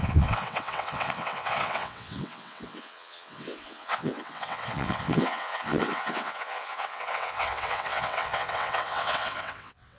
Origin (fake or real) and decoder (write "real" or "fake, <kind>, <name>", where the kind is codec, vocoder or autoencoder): fake, vocoder, WaveNeXt